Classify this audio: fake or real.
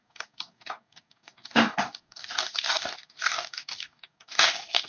fake